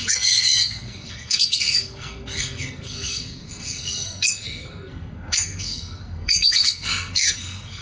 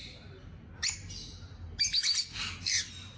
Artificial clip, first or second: first